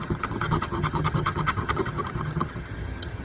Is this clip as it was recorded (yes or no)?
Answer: no